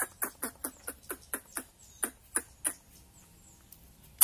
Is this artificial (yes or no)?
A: no